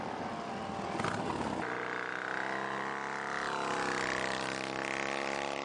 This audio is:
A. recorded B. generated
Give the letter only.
A